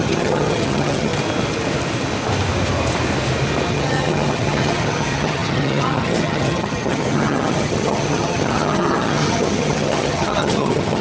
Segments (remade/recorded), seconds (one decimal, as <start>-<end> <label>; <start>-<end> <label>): 0.0-1.1 remade; 1.1-3.7 recorded; 3.7-11.0 remade